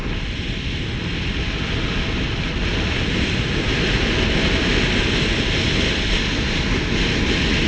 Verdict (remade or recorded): recorded